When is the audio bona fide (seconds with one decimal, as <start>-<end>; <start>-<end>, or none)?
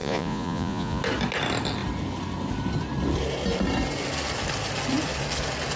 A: 1.0-5.8